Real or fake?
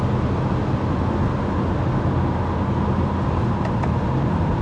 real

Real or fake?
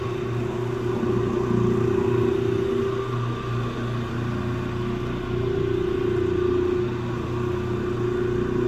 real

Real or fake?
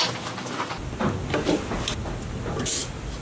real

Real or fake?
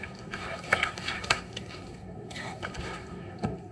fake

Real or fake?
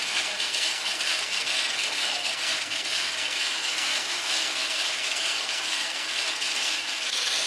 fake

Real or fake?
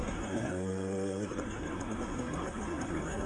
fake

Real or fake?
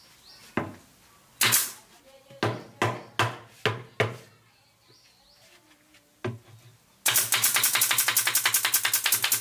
real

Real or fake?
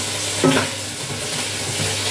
real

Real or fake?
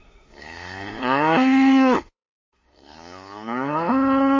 fake